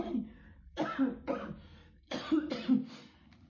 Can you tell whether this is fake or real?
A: fake